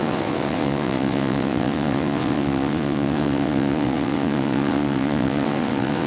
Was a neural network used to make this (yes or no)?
yes